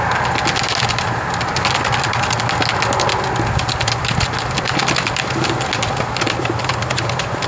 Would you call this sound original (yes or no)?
yes